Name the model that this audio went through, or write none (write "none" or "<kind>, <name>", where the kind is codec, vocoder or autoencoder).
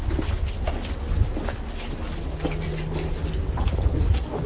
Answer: none